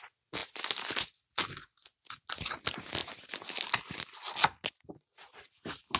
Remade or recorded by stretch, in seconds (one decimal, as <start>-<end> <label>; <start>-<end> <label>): 0.0-6.0 recorded